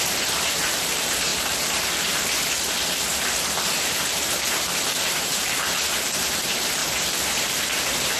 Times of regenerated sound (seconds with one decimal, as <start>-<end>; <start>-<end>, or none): 0.0-8.2